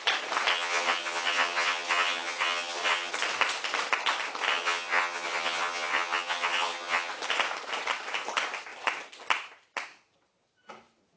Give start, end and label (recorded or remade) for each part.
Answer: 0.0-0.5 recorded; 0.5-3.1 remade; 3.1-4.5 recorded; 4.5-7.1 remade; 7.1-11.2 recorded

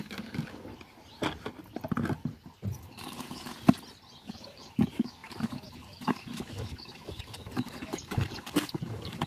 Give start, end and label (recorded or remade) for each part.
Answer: 0.0-0.7 remade; 0.7-2.8 recorded; 2.8-3.5 remade; 3.5-4.2 recorded; 4.2-9.3 remade

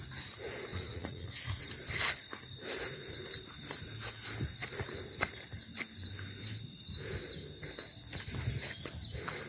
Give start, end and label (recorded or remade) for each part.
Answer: 0.0-0.7 recorded; 0.7-1.7 remade; 1.7-9.5 recorded

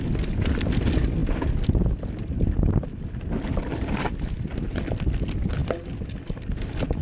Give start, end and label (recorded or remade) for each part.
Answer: 0.0-7.0 recorded

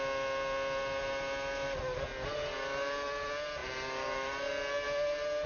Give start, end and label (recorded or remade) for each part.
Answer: 0.0-3.6 recorded; 3.6-4.5 remade; 4.5-5.5 recorded

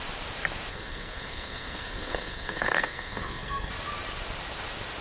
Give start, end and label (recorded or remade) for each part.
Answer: 0.0-0.7 recorded; 0.7-3.7 remade; 3.7-5.0 recorded

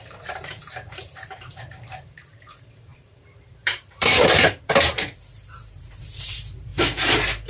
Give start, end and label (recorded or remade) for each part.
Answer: 0.0-6.7 remade; 6.7-7.5 recorded